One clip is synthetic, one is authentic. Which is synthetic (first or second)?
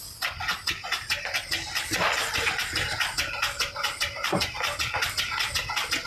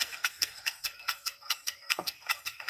second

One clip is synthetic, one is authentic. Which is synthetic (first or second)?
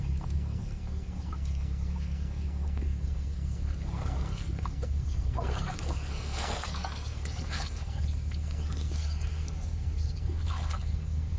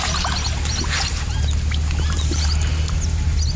first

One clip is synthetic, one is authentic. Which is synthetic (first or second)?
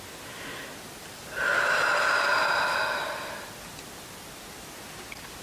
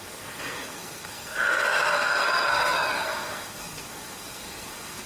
second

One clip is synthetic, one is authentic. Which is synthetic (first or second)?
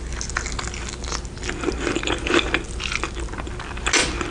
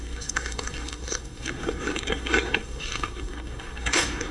second